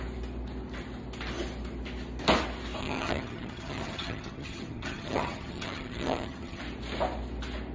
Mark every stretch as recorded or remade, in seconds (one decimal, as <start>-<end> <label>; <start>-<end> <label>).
0.0-2.8 recorded; 2.8-6.6 remade; 6.6-7.7 recorded